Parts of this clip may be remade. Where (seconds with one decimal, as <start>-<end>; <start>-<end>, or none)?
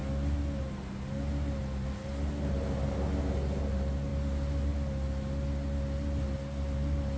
none